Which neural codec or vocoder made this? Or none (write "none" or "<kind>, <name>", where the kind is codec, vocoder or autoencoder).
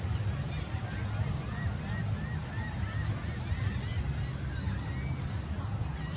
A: none